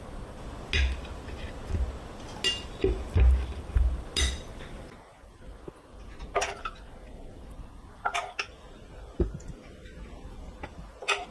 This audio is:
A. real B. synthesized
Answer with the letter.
A